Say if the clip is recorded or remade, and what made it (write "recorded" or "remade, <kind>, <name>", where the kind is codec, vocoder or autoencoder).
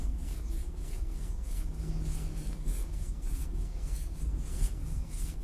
remade, codec, SNAC